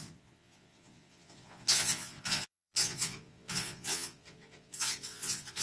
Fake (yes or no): yes